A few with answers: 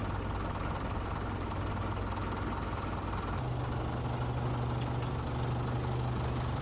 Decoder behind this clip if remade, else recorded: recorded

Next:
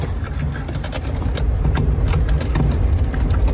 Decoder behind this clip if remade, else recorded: recorded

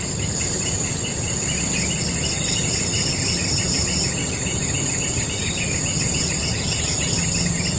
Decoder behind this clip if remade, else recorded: recorded